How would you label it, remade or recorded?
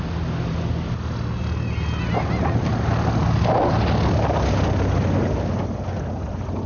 recorded